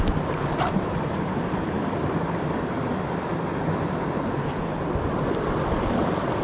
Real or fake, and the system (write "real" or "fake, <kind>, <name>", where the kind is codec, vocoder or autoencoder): real